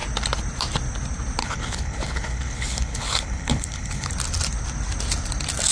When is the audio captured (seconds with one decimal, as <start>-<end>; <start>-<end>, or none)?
0.0-1.4; 4.1-5.7